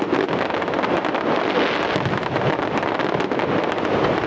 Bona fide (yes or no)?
yes